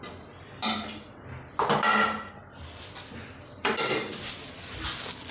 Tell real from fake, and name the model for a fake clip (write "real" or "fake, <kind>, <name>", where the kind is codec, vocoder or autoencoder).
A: real